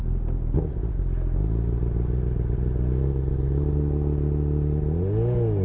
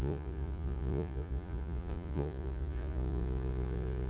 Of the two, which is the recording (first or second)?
first